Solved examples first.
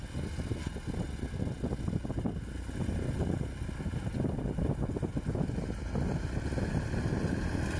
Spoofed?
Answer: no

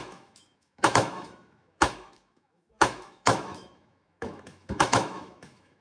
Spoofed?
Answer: yes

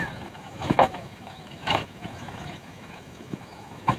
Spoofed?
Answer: yes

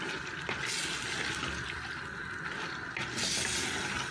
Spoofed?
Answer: no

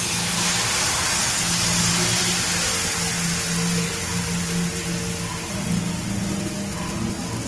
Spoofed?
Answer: no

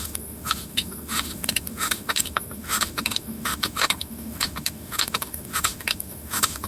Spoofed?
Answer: yes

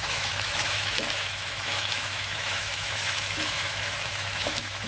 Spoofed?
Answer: yes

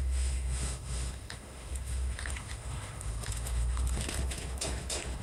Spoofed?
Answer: yes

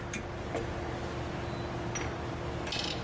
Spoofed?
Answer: no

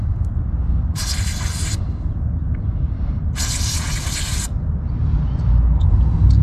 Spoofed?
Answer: no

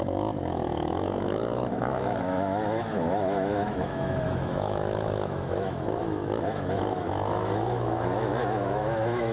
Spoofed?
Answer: yes